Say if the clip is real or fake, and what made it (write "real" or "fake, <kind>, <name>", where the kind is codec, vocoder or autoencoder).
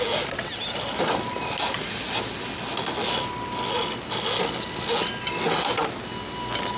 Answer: real